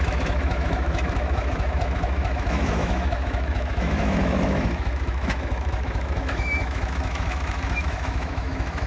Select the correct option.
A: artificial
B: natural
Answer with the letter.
A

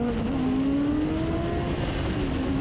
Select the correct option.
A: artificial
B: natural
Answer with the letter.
B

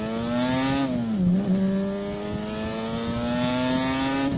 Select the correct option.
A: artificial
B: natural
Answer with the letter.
B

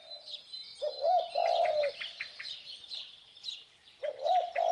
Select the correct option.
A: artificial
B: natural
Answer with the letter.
B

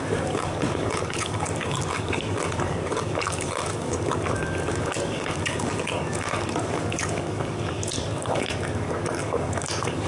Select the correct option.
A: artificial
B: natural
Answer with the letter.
A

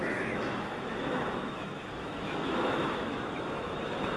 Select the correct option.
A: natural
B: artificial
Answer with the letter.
B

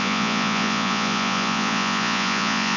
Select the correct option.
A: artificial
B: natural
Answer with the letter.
A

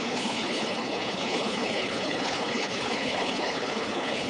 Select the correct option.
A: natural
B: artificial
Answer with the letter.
B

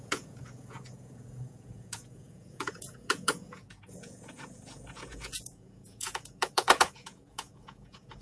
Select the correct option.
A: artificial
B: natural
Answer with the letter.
A